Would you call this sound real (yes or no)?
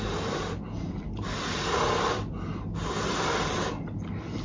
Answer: yes